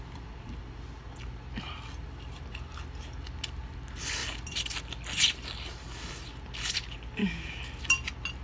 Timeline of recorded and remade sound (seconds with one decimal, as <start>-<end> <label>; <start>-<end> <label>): 0.0-7.2 recorded; 7.2-7.8 remade; 7.8-8.4 recorded